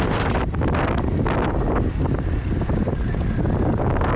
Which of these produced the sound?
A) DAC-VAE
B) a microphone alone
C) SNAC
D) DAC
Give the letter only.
B